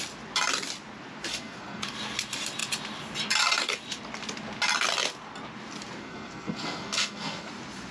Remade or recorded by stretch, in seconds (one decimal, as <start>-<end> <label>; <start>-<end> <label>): 0.0-1.3 recorded; 1.3-1.8 remade; 1.8-6.0 recorded; 6.0-7.5 remade; 7.5-7.9 recorded